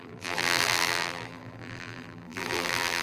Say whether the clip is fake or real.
fake